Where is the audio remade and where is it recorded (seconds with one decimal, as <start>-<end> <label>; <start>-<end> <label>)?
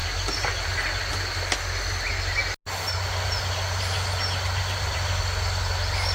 0.0-6.1 recorded